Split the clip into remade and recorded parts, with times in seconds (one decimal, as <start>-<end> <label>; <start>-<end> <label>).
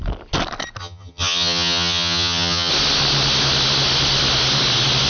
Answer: 0.0-0.8 recorded; 0.8-2.7 remade; 2.7-5.1 recorded